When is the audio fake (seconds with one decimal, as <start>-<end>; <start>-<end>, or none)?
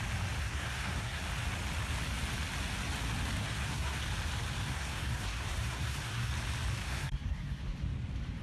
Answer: 0.4-1.2; 3.4-4.0; 4.6-6.3; 6.8-7.6